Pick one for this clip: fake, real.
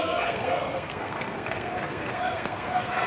fake